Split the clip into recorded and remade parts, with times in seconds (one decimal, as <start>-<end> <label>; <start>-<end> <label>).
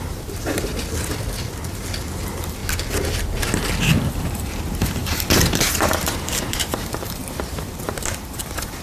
0.0-0.7 remade; 0.7-2.2 recorded; 2.2-2.6 remade; 2.6-4.1 recorded; 4.1-8.8 remade